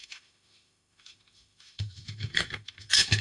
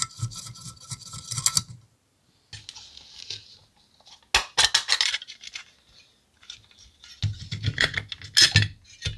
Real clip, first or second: second